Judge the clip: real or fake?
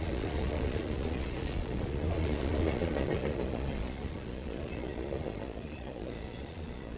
fake